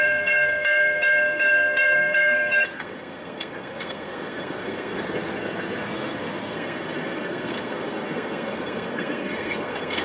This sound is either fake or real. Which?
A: fake